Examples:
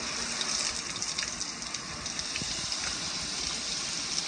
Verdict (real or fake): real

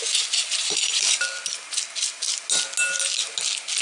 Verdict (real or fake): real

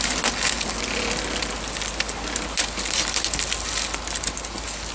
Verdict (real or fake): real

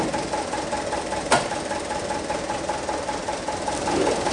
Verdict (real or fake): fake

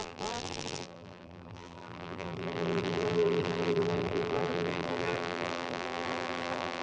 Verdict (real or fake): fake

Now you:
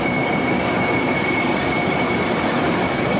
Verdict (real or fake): fake